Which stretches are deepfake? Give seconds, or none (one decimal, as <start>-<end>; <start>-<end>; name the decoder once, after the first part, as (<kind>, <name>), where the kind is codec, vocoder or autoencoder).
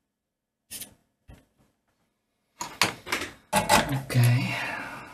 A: none